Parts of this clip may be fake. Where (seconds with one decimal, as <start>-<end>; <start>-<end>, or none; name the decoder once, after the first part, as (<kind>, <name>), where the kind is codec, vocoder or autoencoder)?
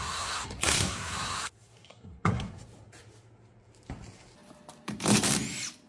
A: 0.0-2.7 (codec, SNAC)